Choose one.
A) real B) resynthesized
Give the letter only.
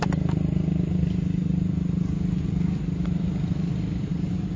A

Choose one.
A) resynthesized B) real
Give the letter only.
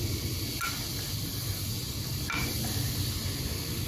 B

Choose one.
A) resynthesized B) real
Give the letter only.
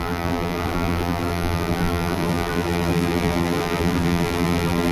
A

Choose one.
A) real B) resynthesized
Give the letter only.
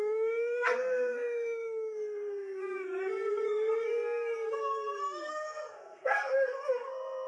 B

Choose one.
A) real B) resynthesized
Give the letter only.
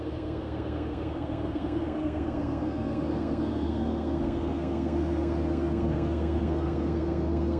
B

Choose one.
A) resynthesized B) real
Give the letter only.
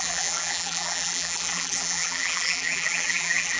A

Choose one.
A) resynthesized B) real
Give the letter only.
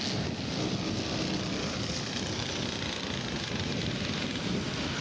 B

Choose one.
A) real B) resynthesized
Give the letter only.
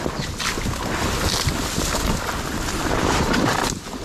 A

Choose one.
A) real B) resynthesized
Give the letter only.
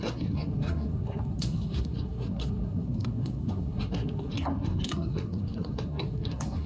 B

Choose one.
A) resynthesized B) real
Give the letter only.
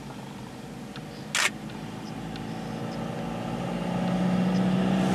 B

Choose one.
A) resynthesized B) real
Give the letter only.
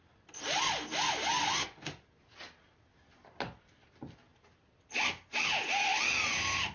B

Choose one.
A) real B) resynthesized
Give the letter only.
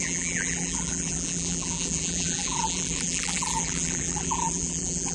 B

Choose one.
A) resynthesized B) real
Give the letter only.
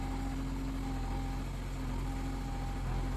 B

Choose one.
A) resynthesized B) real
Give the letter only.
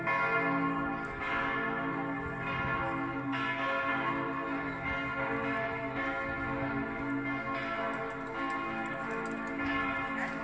B